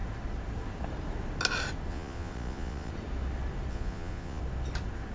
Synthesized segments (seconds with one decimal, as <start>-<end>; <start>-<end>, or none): 1.9-2.9; 3.7-4.4